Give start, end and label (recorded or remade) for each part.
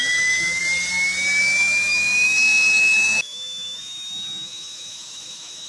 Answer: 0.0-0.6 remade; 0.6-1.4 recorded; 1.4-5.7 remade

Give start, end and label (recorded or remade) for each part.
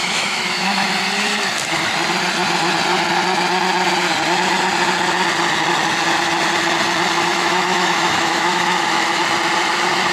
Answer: 0.0-0.9 remade; 0.9-7.3 recorded; 7.3-9.2 remade; 9.2-10.1 recorded